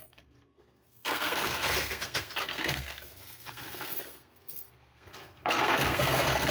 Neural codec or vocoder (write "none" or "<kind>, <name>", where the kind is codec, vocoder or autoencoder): codec, SNAC